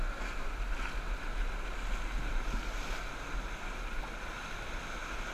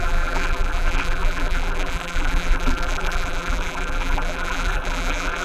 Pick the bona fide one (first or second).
first